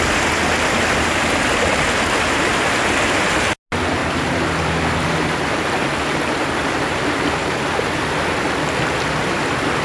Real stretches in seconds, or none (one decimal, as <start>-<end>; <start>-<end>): 0.0-4.0; 4.5-9.8

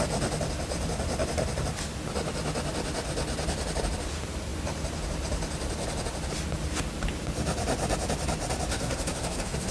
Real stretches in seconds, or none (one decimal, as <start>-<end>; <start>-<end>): 0.0-8.7